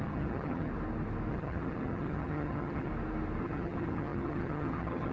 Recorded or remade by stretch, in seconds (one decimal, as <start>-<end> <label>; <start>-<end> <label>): 0.0-0.7 remade; 0.7-1.3 recorded; 1.3-2.9 remade; 2.9-3.4 recorded; 3.4-5.1 remade